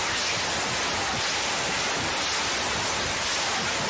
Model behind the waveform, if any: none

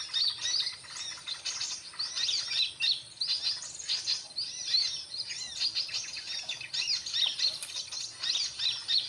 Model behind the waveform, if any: none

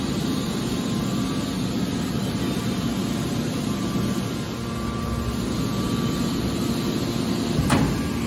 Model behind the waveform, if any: none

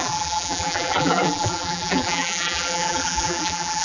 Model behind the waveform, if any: vocoder, BigVGAN v2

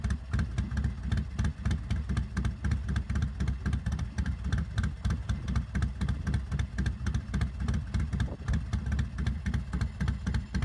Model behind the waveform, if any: none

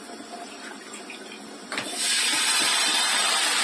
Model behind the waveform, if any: vocoder, BigVGAN v2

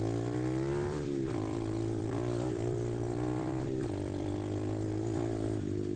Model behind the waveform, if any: vocoder, BigVGAN v2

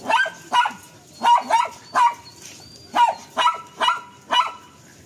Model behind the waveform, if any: none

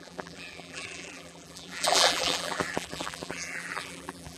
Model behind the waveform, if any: vocoder, BigVGAN v2